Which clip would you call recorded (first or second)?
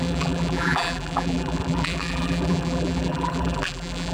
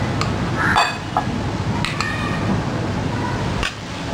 second